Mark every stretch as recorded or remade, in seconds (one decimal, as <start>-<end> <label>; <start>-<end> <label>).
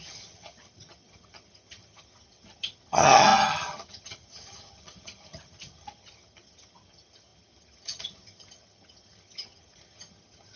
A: 0.0-10.6 remade